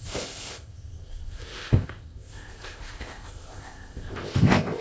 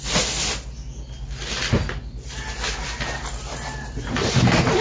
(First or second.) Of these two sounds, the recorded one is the second